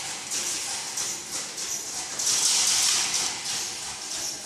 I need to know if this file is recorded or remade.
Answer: recorded